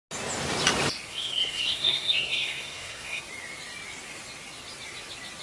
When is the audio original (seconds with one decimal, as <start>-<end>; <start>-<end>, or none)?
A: 0.0-1.1; 3.2-5.4